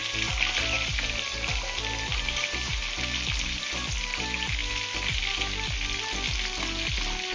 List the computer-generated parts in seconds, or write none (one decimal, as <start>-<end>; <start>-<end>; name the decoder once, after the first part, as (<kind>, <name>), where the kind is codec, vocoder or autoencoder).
none